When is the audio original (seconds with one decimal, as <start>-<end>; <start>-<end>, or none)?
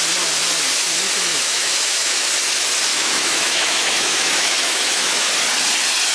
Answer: 0.0-1.3; 2.3-2.9; 5.3-6.1